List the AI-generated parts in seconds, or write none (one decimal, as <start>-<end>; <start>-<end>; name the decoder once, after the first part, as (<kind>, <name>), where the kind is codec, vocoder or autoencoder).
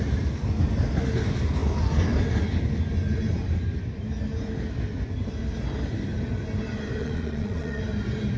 7.0-7.8 (vocoder, Vocos)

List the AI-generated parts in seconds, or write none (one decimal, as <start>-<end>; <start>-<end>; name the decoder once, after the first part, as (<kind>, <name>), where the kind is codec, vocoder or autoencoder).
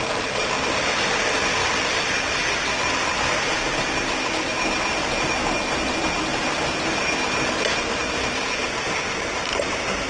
none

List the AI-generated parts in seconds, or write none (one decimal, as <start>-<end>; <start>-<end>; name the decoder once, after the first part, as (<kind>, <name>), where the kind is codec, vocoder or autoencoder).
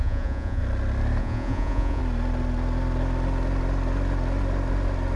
0.0-0.6 (vocoder, Vocos); 1.2-2.0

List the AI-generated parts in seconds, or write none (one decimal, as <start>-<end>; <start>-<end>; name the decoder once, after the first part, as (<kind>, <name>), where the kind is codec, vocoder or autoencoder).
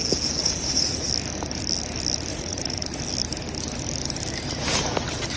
0.4-1.1 (vocoder, Vocos); 2.3-3.0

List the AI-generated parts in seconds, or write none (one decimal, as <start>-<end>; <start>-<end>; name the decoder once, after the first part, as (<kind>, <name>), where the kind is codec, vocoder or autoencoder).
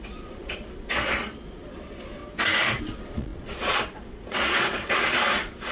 0.0-2.2 (vocoder, Vocos); 2.8-5.7